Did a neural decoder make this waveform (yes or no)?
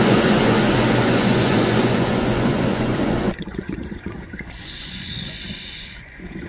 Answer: yes